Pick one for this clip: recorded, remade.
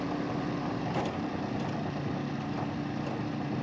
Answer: recorded